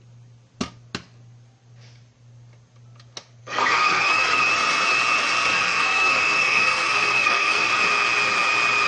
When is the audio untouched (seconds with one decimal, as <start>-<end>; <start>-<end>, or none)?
0.0-3.4; 4.4-5.5; 7.7-8.9